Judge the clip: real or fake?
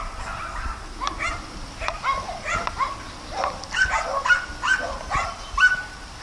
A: real